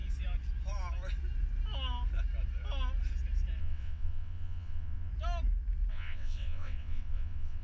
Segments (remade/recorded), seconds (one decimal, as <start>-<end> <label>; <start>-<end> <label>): 0.0-3.6 recorded; 3.6-5.1 remade; 5.1-5.9 recorded; 5.9-7.6 remade

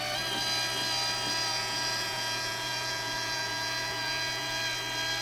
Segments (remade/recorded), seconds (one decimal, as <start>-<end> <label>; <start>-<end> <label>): 0.0-1.5 recorded; 1.5-4.6 remade; 4.6-5.2 recorded

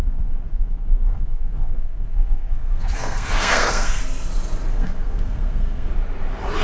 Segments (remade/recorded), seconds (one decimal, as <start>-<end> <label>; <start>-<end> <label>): 0.0-4.0 remade; 4.0-4.7 recorded; 4.7-5.9 remade; 5.9-6.6 recorded

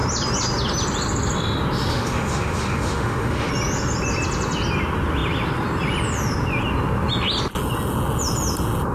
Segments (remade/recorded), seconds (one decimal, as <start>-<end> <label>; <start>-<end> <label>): 0.0-1.9 recorded; 1.9-3.5 remade; 3.5-8.9 recorded

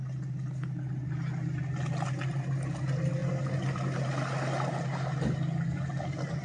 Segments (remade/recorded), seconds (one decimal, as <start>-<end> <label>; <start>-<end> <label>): 0.0-6.4 recorded

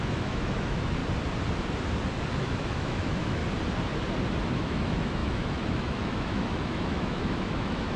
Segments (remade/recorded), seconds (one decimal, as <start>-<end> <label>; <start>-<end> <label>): 0.0-1.0 remade; 1.0-2.3 recorded; 2.3-3.4 remade; 3.4-4.6 recorded; 4.6-8.0 remade

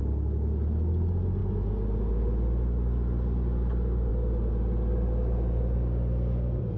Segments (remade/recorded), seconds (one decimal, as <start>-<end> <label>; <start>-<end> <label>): 0.0-6.8 recorded

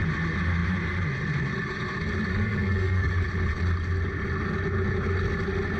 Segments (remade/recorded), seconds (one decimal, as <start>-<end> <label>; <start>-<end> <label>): 0.0-2.3 recorded; 2.3-3.1 remade; 3.1-5.8 recorded